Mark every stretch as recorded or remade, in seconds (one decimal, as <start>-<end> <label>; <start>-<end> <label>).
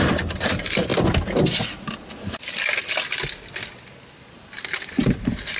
0.0-0.9 remade; 0.9-4.2 recorded; 4.2-5.6 remade